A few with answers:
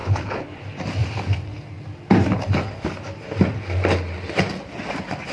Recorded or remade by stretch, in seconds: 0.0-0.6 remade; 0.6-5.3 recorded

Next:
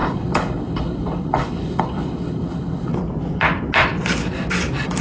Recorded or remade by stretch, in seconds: 0.0-2.9 remade; 2.9-5.0 recorded

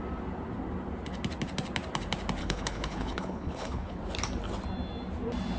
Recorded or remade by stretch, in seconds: 0.0-2.4 recorded; 2.4-4.0 remade; 4.0-5.6 recorded

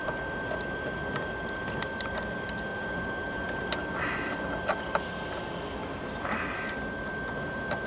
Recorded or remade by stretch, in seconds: 0.0-7.9 recorded

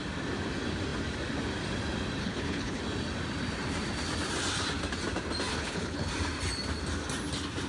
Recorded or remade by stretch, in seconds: 0.0-2.2 recorded; 2.2-2.8 remade; 2.8-5.5 recorded; 5.5-6.1 remade; 6.1-7.7 recorded

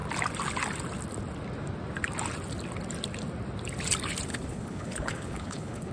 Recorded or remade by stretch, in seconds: 0.0-4.3 recorded; 4.3-5.9 remade

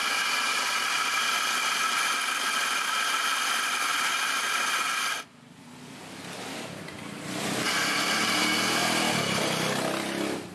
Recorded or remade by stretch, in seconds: 0.0-10.5 recorded

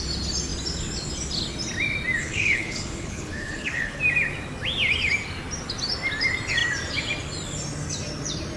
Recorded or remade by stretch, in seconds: 0.0-2.2 recorded; 2.2-4.0 remade; 4.0-8.6 recorded